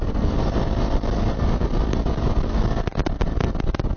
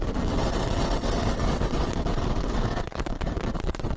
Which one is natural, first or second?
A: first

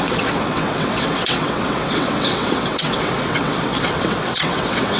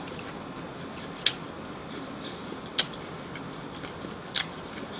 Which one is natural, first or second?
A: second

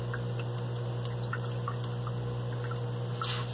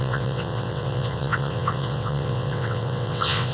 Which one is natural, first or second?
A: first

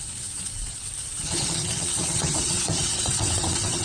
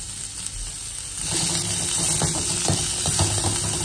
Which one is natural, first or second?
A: second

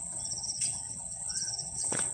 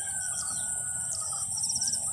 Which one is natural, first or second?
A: second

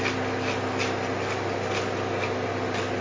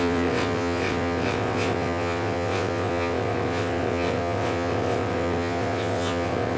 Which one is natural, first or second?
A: first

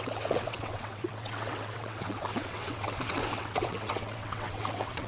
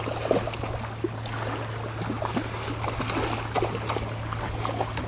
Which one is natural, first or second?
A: second